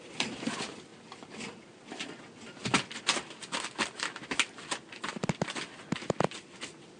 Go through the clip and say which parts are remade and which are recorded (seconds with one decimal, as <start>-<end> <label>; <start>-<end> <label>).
0.0-7.0 recorded